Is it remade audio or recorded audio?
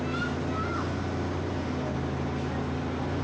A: recorded